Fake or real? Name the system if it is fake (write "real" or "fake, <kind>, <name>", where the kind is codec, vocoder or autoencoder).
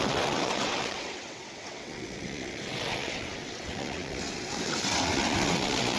fake, vocoder, WaveNeXt